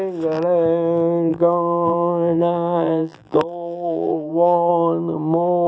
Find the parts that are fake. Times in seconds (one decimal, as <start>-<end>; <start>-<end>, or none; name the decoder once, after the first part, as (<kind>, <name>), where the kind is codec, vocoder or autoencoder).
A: 1.3-4.7 (vocoder, BigVGAN v2)